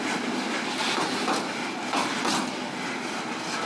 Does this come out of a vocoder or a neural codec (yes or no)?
no